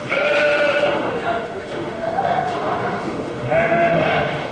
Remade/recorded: remade